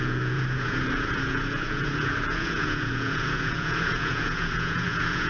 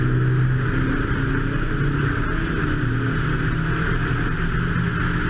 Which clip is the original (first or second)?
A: second